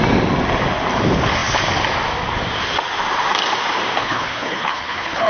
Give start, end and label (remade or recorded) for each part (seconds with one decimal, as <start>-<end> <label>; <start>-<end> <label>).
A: 0.0-4.0 recorded; 4.0-5.3 remade